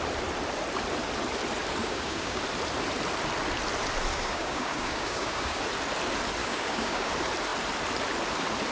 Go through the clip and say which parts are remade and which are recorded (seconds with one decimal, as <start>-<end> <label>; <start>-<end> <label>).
0.0-1.8 recorded; 1.8-2.4 remade; 2.4-4.1 recorded; 4.1-5.6 remade; 5.6-6.4 recorded; 6.4-7.1 remade; 7.1-8.7 recorded